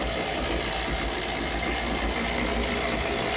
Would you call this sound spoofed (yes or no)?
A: no